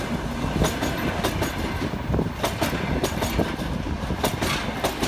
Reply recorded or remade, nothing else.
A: recorded